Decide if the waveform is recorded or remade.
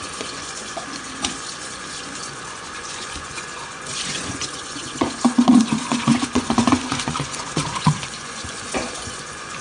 remade